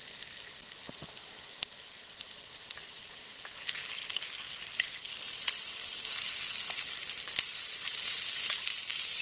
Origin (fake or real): real